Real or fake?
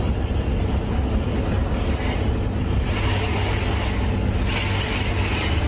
real